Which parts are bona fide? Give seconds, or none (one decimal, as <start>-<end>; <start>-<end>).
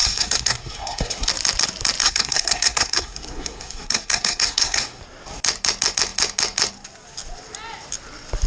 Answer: 1.3-2.0; 5.0-8.5